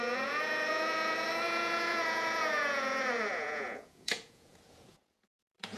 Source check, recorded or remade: remade